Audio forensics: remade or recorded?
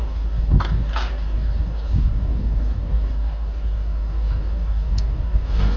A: remade